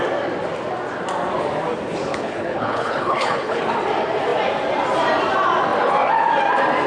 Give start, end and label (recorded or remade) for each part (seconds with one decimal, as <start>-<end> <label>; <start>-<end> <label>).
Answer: 0.0-2.0 recorded; 2.0-3.6 remade; 3.6-6.9 recorded